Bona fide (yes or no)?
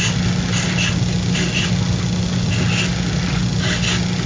yes